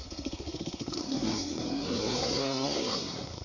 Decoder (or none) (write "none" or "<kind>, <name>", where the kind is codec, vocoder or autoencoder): codec, SNAC